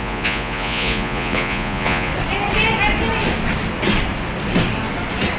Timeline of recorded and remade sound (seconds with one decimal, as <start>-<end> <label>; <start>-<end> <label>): 0.0-2.1 remade; 2.1-5.4 recorded

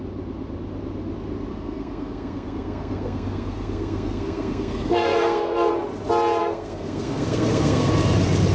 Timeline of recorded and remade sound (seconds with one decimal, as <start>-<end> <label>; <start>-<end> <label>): 0.0-1.5 recorded; 1.5-5.7 remade; 5.7-6.4 recorded; 6.4-7.9 remade; 7.9-8.5 recorded

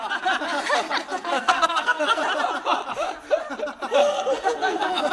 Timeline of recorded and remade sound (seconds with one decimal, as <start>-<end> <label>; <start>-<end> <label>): 0.0-1.1 recorded; 1.1-2.2 remade; 2.2-4.0 recorded; 4.0-5.1 remade

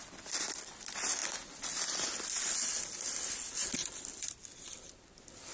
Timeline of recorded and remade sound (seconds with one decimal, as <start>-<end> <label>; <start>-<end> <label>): 0.0-5.5 recorded

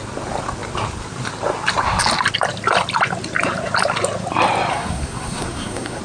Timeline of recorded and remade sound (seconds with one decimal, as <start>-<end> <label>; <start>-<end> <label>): 0.0-4.7 recorded; 4.7-6.0 remade

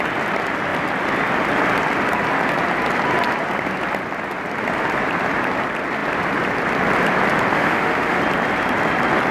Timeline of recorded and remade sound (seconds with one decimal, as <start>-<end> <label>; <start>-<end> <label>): 0.0-7.5 recorded; 7.5-8.2 remade; 8.2-9.3 recorded

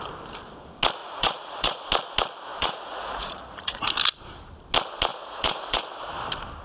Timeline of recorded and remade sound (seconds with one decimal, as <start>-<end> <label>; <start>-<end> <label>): 0.0-1.0 recorded; 1.0-1.8 remade; 1.8-2.5 recorded; 2.5-3.9 remade; 3.9-5.1 recorded; 5.1-5.8 remade; 5.8-6.6 recorded